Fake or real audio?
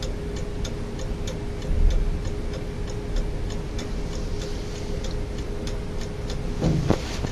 real